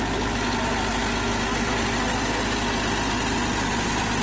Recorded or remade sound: recorded